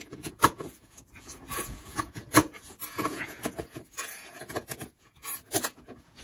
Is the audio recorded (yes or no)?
no